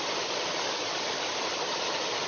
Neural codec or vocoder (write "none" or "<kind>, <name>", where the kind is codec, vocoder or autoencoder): none